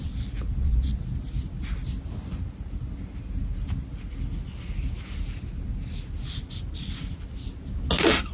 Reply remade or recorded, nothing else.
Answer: recorded